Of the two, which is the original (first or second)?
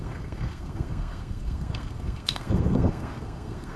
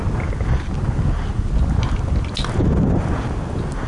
second